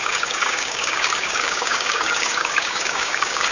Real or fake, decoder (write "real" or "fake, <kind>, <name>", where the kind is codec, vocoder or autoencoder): fake, codec, DAC